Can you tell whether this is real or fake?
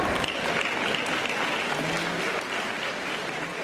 real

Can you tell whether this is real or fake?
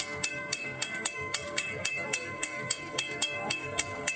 fake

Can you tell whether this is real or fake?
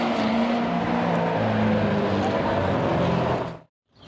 real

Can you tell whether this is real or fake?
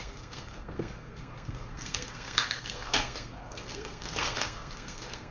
fake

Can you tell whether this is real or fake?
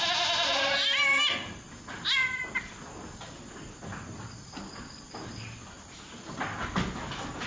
real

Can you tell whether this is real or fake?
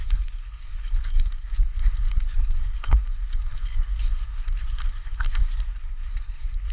fake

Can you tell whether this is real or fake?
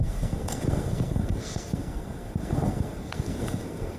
fake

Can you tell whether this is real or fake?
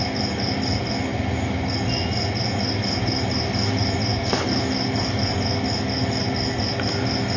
real